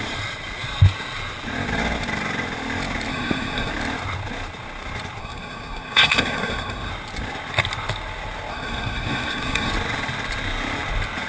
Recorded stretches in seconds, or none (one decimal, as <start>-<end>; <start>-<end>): 0.0-3.1; 3.7-5.2; 6.9-8.5; 9.7-11.3